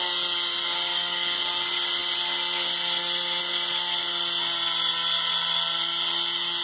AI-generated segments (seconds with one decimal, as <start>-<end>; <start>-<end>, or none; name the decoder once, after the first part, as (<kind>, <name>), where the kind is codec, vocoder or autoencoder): 0.9-1.4 (codec, DAC)